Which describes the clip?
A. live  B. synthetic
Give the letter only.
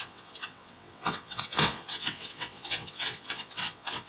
B